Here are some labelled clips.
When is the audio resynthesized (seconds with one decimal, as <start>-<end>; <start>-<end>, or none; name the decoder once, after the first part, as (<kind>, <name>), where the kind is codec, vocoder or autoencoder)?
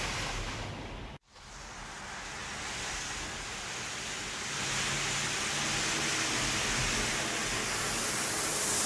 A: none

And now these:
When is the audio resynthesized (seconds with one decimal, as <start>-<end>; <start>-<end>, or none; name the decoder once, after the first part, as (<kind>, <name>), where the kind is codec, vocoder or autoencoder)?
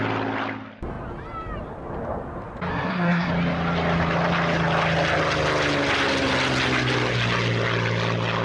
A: 2.7-3.3 (codec, SNAC)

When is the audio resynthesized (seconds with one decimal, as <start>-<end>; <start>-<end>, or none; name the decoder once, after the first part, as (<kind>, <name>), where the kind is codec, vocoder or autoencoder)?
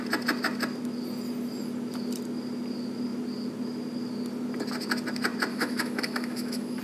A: 5.5-6.8 (autoencoder, DAC-VAE)